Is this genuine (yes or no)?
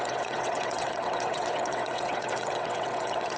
no